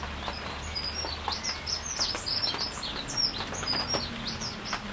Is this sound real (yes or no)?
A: yes